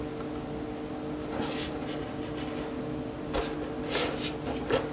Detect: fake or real real